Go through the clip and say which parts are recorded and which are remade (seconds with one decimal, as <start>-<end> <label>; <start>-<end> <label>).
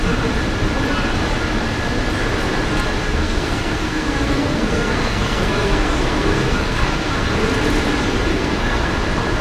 0.0-3.0 recorded; 3.0-7.3 remade; 7.3-8.3 recorded; 8.3-8.9 remade; 8.9-9.4 recorded